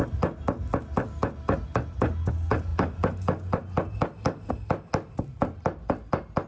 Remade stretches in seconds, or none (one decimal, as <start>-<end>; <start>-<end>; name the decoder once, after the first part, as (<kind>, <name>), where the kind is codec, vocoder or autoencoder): none